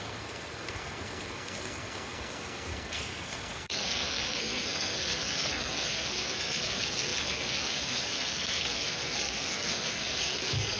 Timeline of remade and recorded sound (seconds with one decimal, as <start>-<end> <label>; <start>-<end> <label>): 0.0-10.8 remade